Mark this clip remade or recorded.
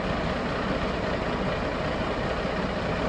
recorded